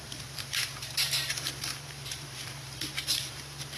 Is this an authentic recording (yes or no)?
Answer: no